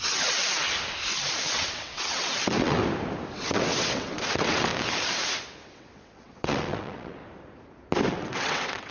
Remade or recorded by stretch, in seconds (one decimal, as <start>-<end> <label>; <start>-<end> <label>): 0.0-0.4 remade; 0.4-1.5 recorded; 1.5-2.8 remade; 2.8-3.3 recorded; 3.3-4.7 remade; 4.7-5.7 recorded; 5.7-7.2 remade; 7.2-8.1 recorded; 8.1-8.9 remade